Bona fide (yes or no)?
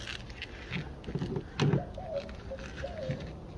yes